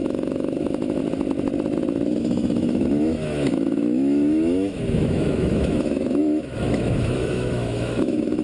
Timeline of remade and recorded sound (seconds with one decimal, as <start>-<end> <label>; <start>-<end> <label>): 0.0-1.0 remade; 1.0-2.2 recorded; 2.2-8.4 remade